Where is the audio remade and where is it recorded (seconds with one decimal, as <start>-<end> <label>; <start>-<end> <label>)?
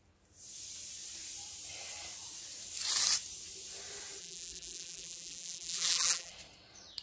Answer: 0.0-4.2 recorded; 4.2-6.3 remade; 6.3-7.0 recorded